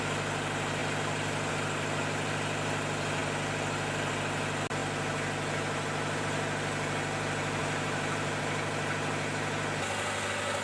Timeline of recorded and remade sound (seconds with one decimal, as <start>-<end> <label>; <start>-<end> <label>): 0.0-7.6 recorded; 7.6-8.4 remade; 8.4-10.6 recorded